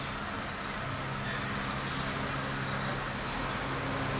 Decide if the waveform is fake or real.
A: real